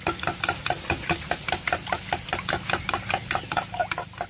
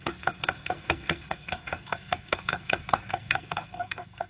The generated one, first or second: second